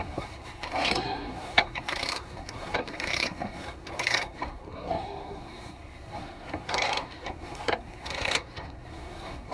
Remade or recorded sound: remade